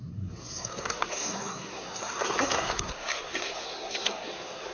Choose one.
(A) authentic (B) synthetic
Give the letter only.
B